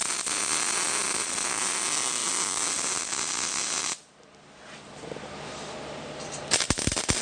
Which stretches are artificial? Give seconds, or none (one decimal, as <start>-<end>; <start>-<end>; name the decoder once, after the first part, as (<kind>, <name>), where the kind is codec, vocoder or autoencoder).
none